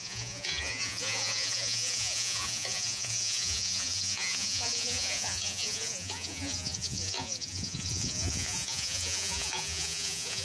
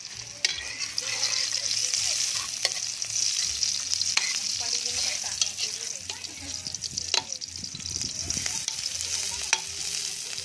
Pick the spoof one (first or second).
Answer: first